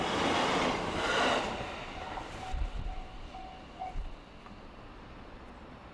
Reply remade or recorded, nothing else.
recorded